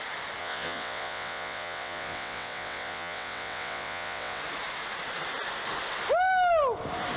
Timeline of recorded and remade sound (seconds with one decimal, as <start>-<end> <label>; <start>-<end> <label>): 0.0-0.4 recorded; 0.4-4.4 remade; 4.4-7.2 recorded